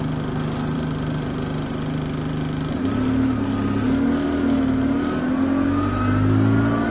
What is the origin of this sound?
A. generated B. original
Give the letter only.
B